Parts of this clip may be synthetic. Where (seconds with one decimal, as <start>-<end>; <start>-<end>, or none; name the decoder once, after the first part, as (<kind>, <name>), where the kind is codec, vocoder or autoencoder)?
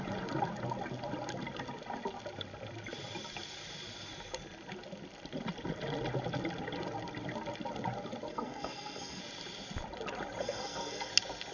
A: 8.3-9.2 (codec, SNAC); 10.4-11.1